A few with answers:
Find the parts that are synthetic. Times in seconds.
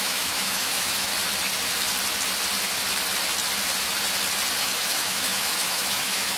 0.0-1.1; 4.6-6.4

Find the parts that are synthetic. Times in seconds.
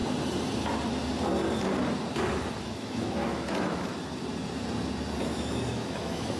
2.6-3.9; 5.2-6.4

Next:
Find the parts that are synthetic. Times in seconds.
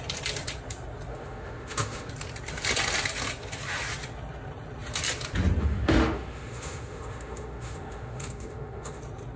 1.1-2.1; 5.6-9.0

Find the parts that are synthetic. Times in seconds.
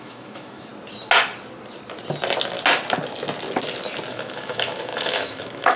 0.0-0.7; 4.1-5.8